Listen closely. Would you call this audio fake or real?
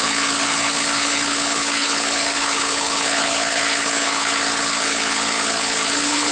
fake